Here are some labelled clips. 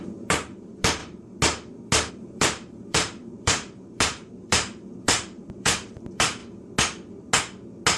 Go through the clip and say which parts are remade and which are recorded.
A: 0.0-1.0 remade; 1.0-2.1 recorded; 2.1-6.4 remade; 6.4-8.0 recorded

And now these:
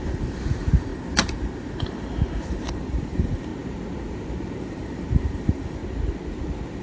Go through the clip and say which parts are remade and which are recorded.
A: 0.0-3.5 remade; 3.5-4.6 recorded; 4.6-5.8 remade; 5.8-6.8 recorded

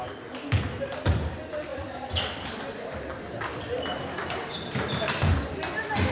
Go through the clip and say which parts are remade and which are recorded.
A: 0.0-1.7 recorded; 1.7-2.6 remade; 2.6-3.5 recorded; 3.5-4.8 remade; 4.8-6.1 recorded

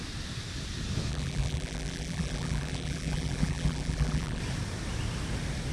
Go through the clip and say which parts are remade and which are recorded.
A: 0.0-1.1 recorded; 1.1-4.4 remade; 4.4-5.7 recorded

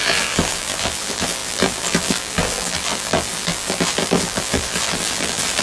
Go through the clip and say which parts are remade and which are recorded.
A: 0.0-5.6 remade

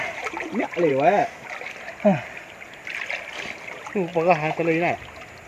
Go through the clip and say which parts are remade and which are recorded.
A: 0.0-5.5 recorded